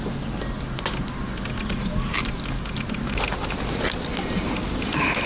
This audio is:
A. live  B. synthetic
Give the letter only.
A